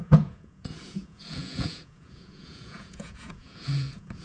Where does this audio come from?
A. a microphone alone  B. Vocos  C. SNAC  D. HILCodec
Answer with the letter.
B